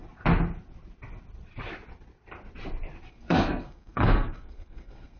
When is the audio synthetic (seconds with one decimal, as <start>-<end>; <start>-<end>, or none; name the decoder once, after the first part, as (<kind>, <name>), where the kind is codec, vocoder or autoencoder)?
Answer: 3.1-5.2 (codec, SNAC)